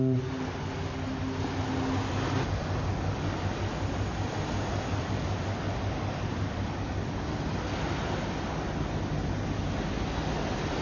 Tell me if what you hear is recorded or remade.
recorded